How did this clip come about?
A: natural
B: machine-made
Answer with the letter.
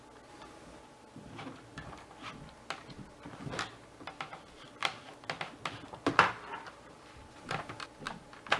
A